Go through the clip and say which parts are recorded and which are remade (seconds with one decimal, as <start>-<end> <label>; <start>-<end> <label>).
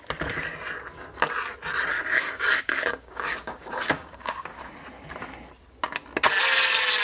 0.0-1.9 recorded; 1.9-4.6 remade; 4.6-7.0 recorded